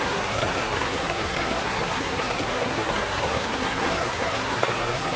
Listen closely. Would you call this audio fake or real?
fake